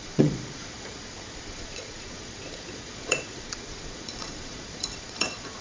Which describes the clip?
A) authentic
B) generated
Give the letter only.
B